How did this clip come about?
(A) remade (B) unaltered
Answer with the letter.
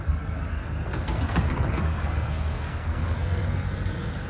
A